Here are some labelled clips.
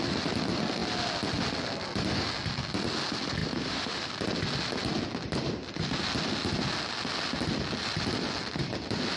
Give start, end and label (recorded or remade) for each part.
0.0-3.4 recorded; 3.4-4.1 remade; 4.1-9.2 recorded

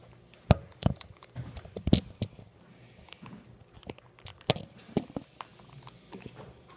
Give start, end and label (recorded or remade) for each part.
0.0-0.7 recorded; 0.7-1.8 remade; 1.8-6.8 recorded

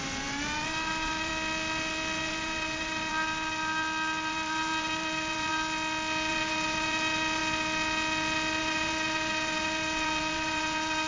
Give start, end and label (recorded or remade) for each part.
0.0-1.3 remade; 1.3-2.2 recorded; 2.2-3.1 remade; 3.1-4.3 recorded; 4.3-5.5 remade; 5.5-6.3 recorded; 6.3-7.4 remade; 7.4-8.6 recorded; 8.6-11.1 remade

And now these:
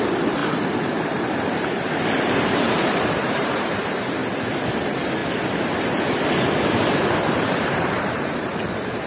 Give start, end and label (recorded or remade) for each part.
0.0-4.2 remade; 4.2-4.8 recorded; 4.8-5.2 remade; 5.2-6.7 recorded; 6.7-9.1 remade